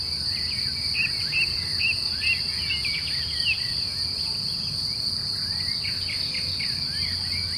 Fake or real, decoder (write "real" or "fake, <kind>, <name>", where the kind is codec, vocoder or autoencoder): real